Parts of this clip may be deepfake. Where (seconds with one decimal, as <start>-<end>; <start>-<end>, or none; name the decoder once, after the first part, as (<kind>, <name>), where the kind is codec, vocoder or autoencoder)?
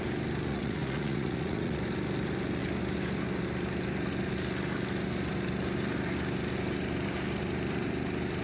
0.5-1.8 (vocoder, Vocos)